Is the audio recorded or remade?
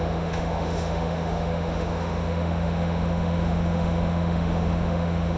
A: remade